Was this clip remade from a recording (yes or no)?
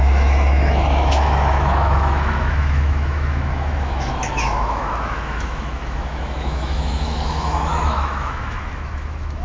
yes